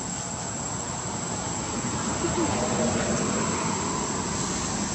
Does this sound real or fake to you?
real